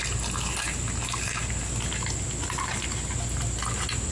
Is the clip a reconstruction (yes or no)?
no